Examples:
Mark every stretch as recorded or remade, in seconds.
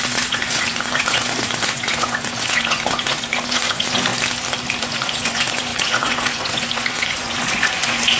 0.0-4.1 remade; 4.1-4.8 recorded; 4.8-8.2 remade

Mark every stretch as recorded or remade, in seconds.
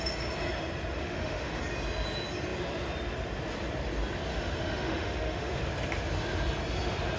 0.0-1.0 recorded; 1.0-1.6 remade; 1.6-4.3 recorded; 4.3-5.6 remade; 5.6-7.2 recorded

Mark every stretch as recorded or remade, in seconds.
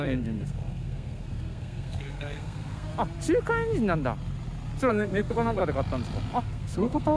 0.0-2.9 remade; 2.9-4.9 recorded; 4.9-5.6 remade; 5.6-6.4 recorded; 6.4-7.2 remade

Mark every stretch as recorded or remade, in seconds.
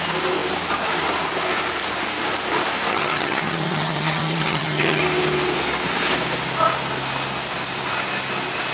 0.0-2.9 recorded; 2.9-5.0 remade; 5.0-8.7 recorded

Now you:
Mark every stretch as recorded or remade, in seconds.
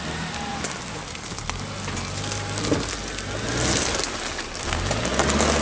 0.0-5.6 recorded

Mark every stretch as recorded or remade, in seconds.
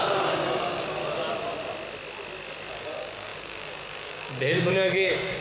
0.0-1.0 remade; 1.0-2.7 recorded; 2.7-5.4 remade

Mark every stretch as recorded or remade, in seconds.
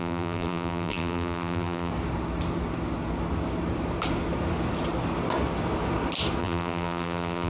0.0-1.9 remade; 1.9-6.4 recorded; 6.4-7.5 remade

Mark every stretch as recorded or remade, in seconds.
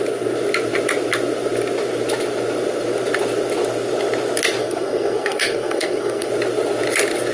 0.0-4.6 recorded; 4.6-6.3 remade; 6.3-7.3 recorded